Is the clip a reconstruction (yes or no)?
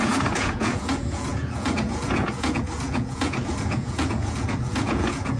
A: yes